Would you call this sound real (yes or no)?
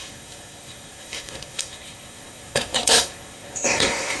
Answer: no